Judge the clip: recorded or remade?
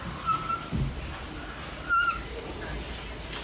recorded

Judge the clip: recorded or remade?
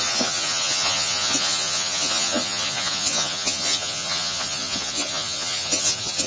remade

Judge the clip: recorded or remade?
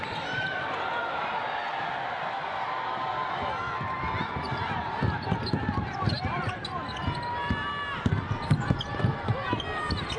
recorded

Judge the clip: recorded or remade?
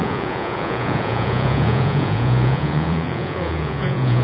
remade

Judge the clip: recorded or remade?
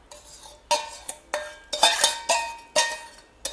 recorded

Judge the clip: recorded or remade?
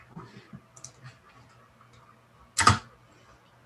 recorded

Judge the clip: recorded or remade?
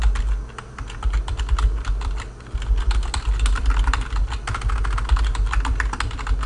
recorded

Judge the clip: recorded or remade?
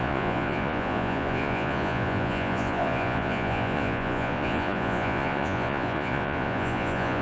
remade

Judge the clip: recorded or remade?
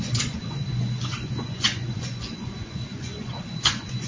remade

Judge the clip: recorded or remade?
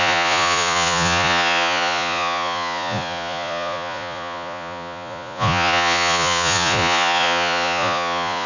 remade